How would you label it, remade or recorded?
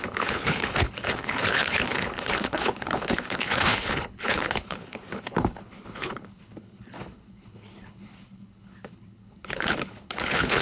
remade